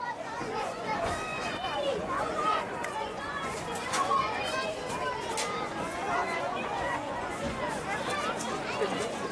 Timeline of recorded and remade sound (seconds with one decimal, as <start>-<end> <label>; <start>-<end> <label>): 0.0-4.8 remade; 4.8-5.7 recorded; 5.7-7.8 remade; 7.8-8.5 recorded; 8.5-9.3 remade